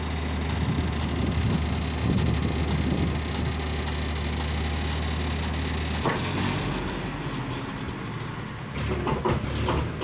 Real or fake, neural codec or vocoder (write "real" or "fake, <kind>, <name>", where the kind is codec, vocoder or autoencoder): real